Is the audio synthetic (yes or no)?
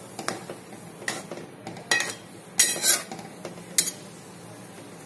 no